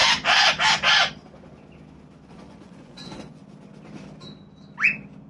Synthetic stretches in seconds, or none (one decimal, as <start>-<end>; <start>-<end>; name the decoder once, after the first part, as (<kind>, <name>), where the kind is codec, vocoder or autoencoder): 2.3-3.4 (vocoder, Vocos)

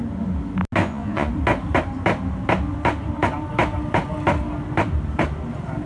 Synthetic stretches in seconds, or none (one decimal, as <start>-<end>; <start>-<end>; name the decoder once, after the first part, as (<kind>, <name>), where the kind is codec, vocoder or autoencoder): 0.8-1.3 (vocoder, Vocos)